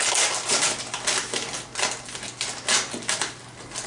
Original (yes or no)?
yes